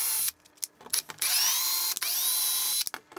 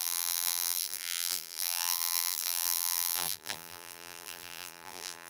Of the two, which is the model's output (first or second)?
second